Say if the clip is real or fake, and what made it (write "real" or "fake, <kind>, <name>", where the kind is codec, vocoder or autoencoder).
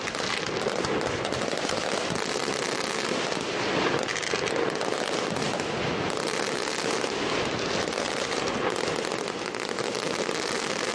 real